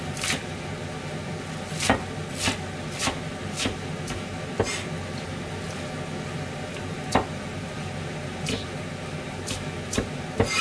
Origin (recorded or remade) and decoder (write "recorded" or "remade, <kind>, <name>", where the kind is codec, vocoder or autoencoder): recorded